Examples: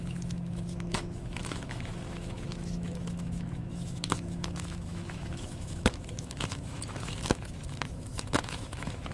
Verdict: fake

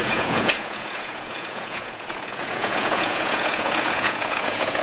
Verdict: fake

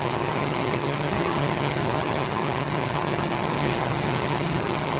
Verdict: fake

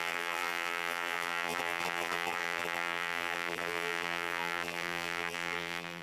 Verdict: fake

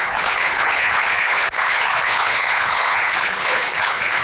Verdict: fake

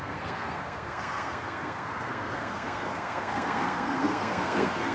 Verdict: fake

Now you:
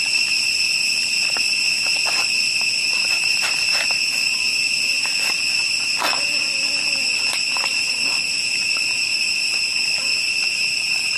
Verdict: fake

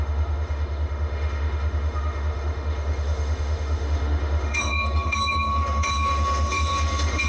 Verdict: fake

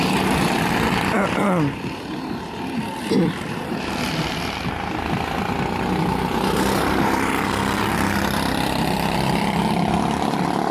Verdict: real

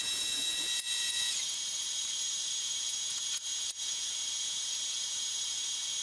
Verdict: fake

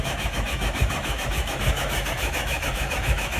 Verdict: fake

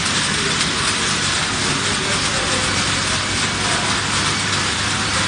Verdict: real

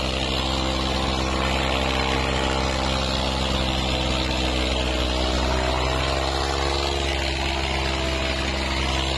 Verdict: real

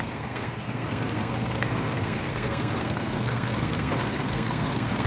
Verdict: fake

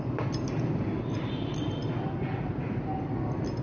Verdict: real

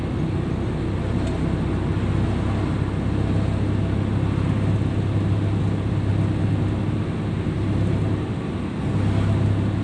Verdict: real